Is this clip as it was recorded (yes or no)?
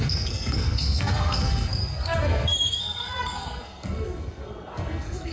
no